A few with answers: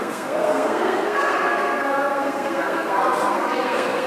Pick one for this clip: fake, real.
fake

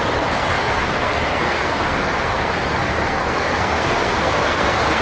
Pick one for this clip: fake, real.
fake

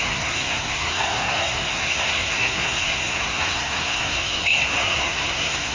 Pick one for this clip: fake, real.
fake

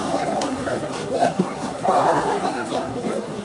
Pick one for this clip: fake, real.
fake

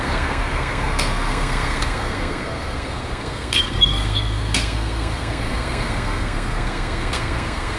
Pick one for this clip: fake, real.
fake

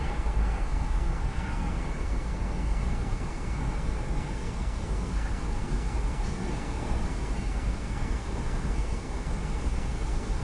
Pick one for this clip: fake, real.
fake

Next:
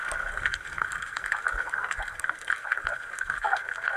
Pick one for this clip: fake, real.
fake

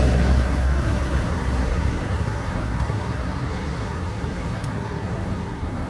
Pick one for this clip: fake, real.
fake